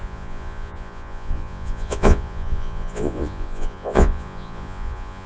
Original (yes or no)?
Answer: no